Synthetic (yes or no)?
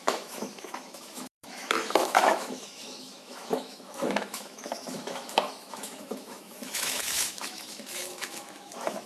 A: yes